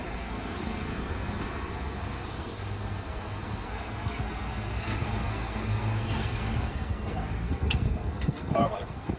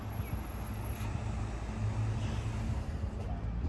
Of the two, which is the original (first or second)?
second